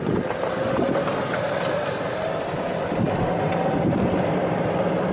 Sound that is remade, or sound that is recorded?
recorded